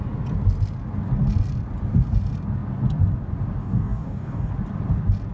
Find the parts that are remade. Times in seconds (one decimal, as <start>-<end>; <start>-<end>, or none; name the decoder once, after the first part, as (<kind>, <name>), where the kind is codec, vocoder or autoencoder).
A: 3.6-4.5 (codec, DAC)